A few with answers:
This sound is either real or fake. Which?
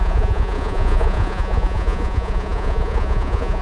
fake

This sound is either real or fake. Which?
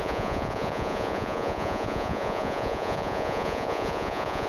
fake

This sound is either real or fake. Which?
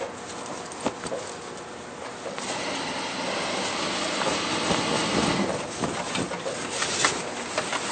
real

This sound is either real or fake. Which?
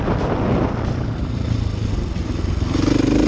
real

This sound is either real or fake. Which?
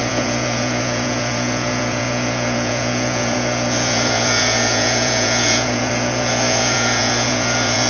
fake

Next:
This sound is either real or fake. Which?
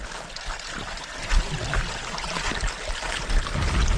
real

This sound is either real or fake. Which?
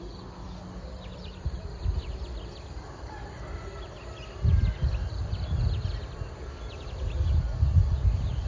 real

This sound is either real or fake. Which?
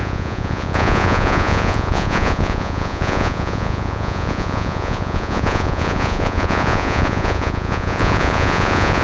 fake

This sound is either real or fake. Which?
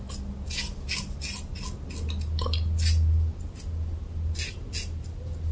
real